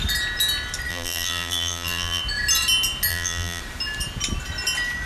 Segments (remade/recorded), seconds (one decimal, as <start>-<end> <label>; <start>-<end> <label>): 0.0-0.9 recorded; 0.9-2.2 remade; 2.2-3.1 recorded; 3.1-3.6 remade; 3.6-5.1 recorded